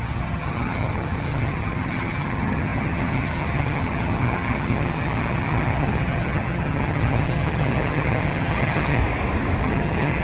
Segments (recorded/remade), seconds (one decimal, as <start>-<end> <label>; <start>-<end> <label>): 0.0-9.0 remade; 9.0-9.6 recorded; 9.6-10.2 remade